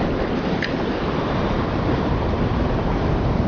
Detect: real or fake real